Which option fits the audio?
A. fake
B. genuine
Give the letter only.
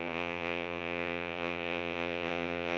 A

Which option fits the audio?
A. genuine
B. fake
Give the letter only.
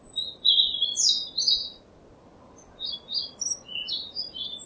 A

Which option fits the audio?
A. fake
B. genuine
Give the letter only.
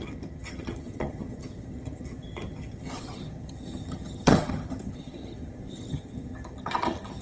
A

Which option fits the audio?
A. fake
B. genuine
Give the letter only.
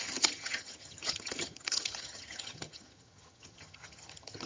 A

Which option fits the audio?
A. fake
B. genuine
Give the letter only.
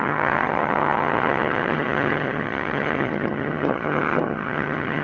A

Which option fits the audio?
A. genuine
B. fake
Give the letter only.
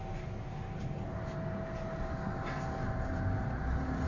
A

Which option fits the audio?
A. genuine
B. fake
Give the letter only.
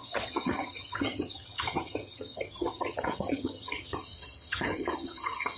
B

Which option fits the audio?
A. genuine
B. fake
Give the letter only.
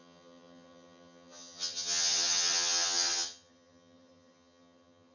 B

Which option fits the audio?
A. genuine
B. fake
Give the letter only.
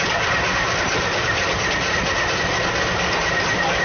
A